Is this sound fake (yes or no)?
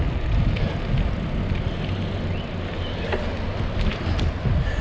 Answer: no